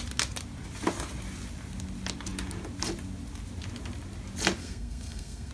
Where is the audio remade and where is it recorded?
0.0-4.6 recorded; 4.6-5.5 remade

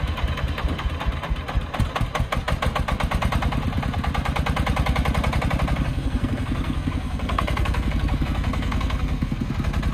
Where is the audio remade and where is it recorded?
0.0-5.9 recorded; 5.9-9.5 remade; 9.5-9.9 recorded

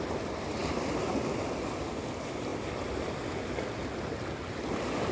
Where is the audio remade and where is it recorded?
0.0-5.1 recorded

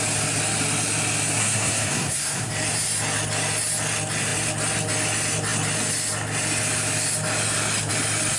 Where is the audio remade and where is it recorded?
0.0-1.4 recorded; 1.4-2.5 remade; 2.5-8.4 recorded

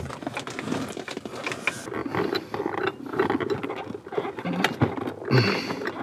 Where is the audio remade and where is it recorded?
0.0-2.0 recorded; 2.0-3.7 remade; 3.7-6.0 recorded